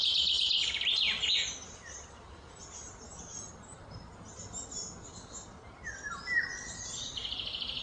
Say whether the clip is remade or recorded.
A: recorded